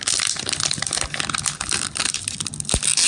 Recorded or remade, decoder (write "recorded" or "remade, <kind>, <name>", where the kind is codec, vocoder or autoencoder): recorded